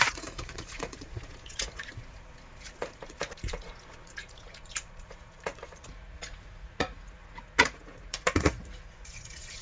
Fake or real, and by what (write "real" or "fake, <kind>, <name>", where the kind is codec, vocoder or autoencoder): fake, vocoder, Vocos